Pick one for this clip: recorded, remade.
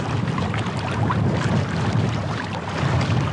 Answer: recorded